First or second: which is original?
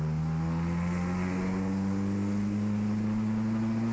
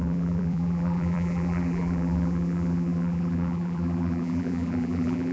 first